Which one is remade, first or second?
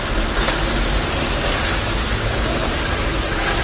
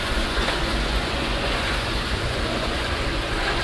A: second